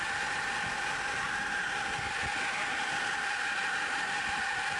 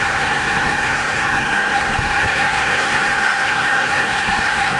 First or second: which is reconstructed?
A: second